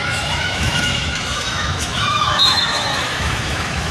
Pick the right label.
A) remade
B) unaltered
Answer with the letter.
A